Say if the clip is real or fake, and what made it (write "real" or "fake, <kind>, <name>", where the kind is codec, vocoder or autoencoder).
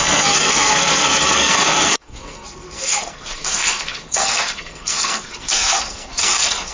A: fake, codec, SNAC